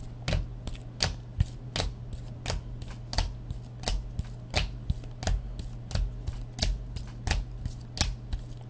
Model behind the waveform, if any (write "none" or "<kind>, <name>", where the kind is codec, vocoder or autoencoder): none